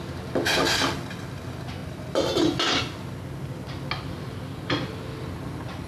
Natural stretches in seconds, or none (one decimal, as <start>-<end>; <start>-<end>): 0.0-5.9